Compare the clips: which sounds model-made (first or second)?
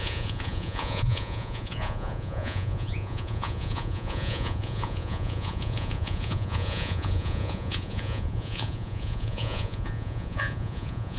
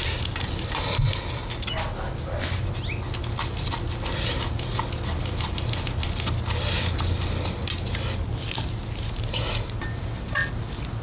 first